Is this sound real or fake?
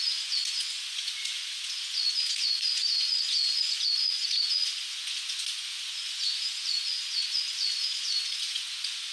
fake